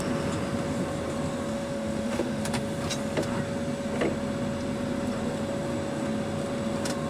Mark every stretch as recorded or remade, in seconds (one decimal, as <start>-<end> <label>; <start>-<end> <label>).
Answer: 0.0-1.5 recorded; 1.5-2.4 remade; 2.4-7.1 recorded